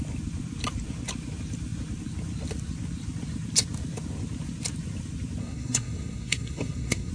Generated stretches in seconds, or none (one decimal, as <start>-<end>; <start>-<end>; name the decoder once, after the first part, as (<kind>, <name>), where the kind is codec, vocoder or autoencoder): 5.4-7.1 (codec, SNAC)